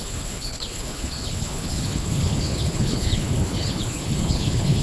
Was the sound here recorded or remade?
remade